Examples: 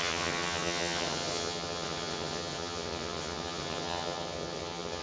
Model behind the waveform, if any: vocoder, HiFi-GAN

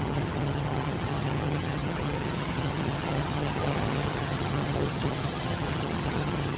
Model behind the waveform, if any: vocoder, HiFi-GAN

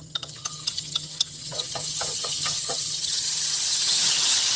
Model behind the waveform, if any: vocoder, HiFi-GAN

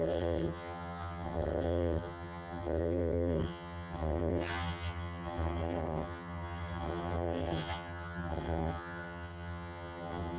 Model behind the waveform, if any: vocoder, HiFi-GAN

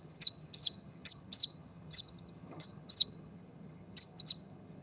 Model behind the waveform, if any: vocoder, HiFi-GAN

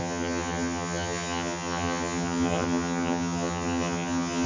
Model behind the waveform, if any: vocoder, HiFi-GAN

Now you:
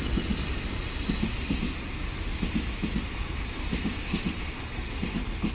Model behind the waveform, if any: none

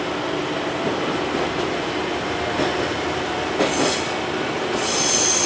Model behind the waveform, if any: none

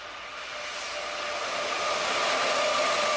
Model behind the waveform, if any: none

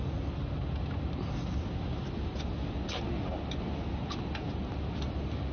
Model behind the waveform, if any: none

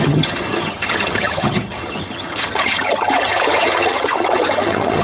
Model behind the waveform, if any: vocoder, HiFi-GAN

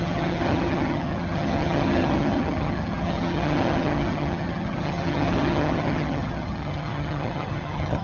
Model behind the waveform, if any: vocoder, HiFi-GAN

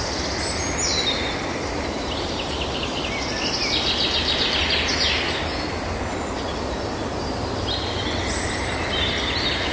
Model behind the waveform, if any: none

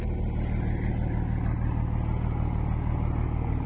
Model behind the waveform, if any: none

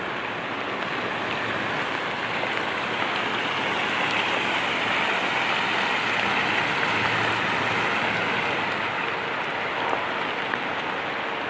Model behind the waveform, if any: none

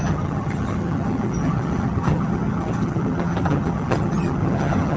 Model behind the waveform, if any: vocoder, HiFi-GAN